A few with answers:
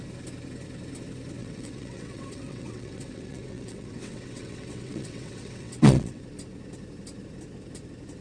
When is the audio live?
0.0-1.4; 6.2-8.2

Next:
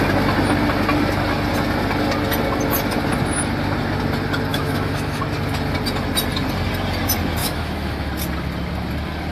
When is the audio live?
0.0-4.5; 5.2-7.4; 8.1-9.3

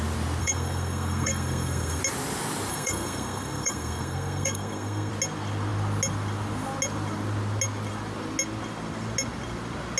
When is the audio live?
0.0-0.4; 2.0-2.7; 5.1-10.0

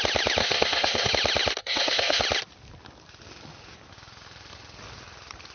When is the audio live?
0.0-0.4; 1.1-1.6; 2.2-5.5

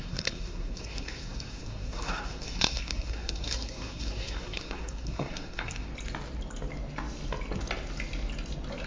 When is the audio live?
5.9-8.9

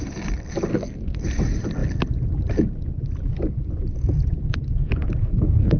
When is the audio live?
0.0-0.7; 1.2-5.2

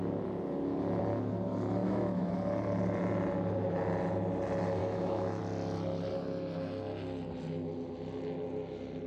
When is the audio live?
0.0-1.8; 2.3-4.8; 5.4-9.1

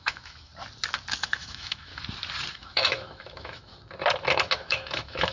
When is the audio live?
0.5-1.2; 1.9-2.5; 3.7-4.6